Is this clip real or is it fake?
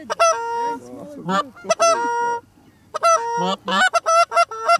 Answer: real